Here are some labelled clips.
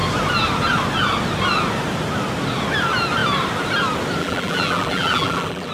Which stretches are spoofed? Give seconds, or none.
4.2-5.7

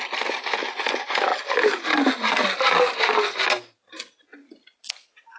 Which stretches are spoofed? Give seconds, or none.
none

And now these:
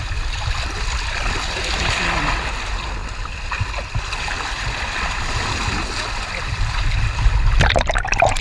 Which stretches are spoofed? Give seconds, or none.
0.0-3.0; 4.0-8.4

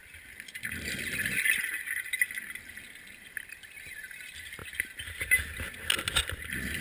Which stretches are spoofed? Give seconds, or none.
none

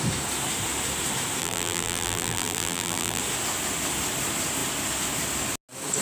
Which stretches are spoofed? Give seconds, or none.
1.4-3.2

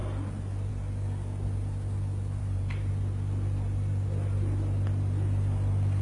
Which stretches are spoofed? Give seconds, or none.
2.4-2.9